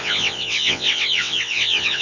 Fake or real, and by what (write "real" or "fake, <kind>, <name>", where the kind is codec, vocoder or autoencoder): fake, vocoder, WaveNeXt